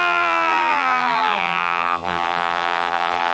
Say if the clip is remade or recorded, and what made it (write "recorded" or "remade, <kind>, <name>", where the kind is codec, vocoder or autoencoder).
remade, vocoder, BigVGAN v2